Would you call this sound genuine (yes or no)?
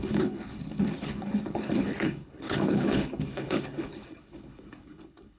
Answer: no